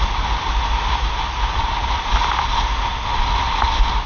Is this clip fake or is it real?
real